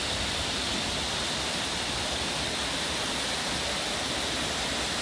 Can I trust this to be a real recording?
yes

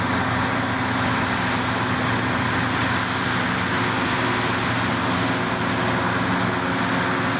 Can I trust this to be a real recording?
yes